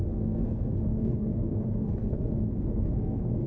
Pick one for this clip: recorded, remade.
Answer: remade